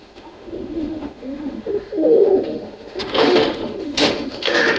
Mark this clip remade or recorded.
remade